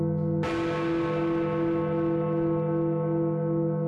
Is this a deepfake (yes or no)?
no